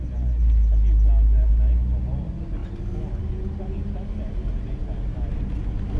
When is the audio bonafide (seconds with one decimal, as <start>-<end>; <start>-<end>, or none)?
0.0-6.0